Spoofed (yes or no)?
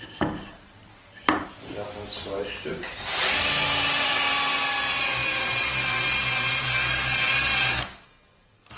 no